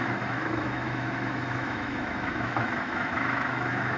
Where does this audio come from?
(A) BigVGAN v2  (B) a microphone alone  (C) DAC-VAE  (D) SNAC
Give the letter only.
C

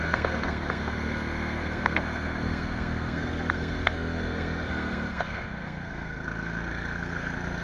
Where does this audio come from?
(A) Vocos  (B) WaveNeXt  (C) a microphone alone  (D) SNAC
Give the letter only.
D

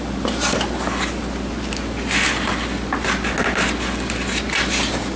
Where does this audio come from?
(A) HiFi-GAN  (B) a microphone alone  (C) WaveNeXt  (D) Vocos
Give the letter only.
B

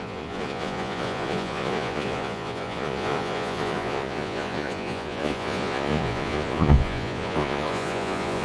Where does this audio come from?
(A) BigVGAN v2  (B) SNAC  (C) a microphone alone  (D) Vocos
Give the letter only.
D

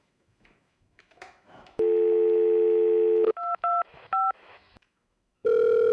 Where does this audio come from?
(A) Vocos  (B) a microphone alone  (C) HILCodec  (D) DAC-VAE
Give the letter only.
D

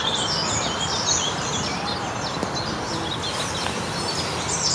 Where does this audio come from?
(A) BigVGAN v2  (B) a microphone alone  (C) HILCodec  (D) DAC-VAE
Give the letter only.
B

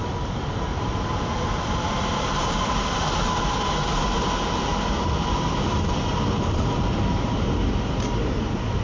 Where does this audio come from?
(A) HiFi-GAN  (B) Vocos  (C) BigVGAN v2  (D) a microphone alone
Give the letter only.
D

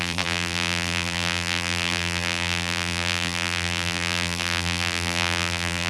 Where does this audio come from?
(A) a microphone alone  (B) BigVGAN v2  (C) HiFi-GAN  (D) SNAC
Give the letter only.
B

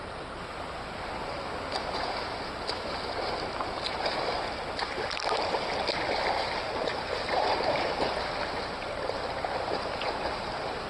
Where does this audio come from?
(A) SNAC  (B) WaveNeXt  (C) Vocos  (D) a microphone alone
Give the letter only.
D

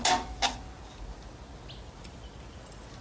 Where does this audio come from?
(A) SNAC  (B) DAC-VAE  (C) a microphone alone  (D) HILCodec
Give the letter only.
C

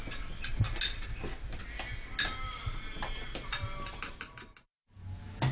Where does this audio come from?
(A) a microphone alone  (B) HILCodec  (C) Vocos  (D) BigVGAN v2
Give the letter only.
A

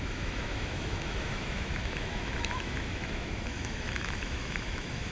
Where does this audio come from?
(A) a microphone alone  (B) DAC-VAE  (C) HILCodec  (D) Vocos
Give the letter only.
B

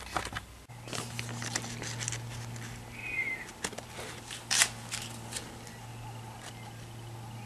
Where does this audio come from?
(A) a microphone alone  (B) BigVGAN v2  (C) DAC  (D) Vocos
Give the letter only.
A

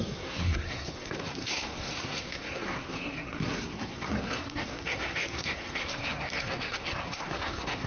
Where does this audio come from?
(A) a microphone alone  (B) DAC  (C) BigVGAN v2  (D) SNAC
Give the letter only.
D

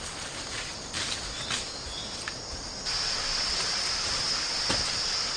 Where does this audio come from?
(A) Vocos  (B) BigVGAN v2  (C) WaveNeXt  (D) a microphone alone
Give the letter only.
D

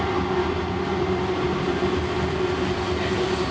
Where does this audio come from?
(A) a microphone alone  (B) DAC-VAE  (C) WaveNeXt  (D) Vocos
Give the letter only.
A